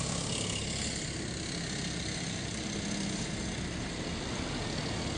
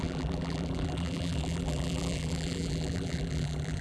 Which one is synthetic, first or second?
second